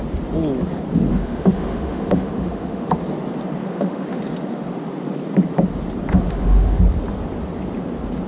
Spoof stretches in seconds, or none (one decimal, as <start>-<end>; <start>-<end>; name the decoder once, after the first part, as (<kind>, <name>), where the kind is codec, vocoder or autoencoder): 1.1-2.9 (autoencoder, DAC-VAE); 3.6-4.2; 6.1-6.8